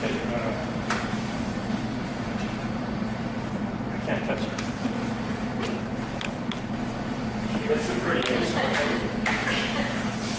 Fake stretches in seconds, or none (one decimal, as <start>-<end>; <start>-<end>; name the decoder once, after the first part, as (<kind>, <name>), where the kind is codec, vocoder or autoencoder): 0.6-1.6 (vocoder, BigVGAN v2); 2.1-4.9